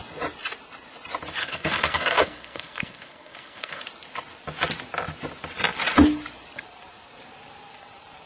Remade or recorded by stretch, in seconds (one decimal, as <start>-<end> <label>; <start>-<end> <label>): 0.0-1.4 recorded; 1.4-3.8 remade; 3.8-8.3 recorded